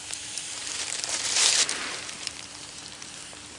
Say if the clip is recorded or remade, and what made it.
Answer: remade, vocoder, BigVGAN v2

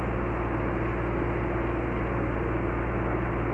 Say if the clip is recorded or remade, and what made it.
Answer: recorded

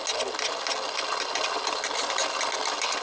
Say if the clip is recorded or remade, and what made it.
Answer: recorded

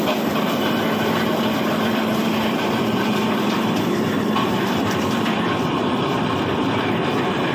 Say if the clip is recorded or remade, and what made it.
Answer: remade, vocoder, BigVGAN v2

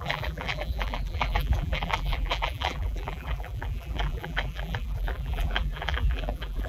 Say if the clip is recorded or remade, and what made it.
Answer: remade, vocoder, BigVGAN v2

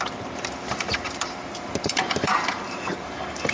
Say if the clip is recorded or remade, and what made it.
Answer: remade, vocoder, BigVGAN v2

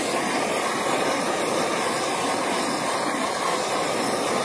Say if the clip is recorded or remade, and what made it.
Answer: recorded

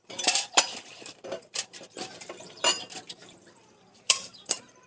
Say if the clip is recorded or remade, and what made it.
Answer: remade, vocoder, BigVGAN v2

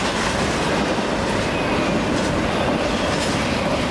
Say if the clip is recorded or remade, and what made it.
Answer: recorded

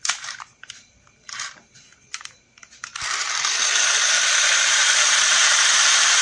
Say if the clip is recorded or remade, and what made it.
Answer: remade, vocoder, BigVGAN v2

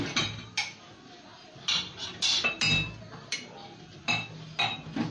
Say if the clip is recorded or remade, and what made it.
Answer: recorded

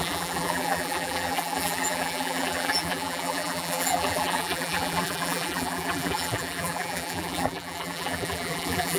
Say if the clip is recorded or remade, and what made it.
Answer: remade, vocoder, BigVGAN v2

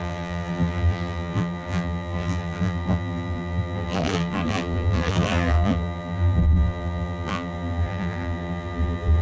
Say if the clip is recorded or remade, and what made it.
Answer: remade, vocoder, BigVGAN v2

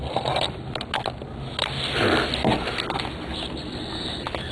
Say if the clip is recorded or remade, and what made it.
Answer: recorded